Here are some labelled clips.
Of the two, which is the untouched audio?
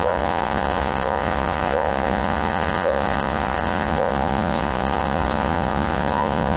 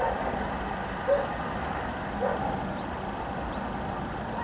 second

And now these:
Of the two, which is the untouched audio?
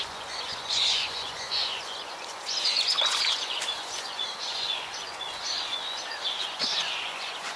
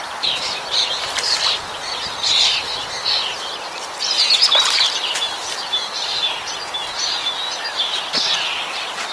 second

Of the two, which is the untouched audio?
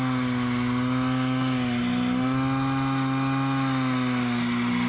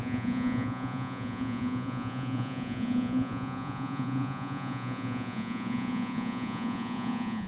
first